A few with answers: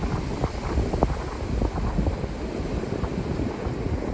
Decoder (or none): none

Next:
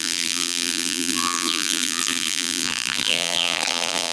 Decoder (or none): vocoder, BigVGAN v2